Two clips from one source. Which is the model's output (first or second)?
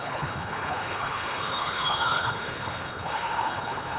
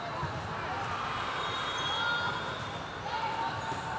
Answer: first